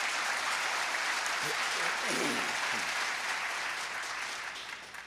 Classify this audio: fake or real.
real